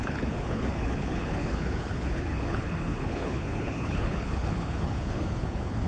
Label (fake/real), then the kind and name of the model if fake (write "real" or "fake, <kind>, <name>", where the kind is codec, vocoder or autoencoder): fake, codec, HILCodec